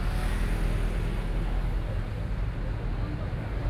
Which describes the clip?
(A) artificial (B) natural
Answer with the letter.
B